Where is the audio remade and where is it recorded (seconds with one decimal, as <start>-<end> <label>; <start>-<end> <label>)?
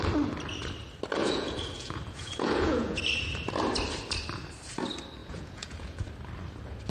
0.0-1.2 recorded; 1.2-3.0 remade; 3.0-5.2 recorded; 5.2-6.1 remade; 6.1-6.9 recorded